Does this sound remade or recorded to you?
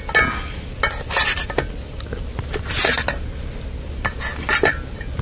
recorded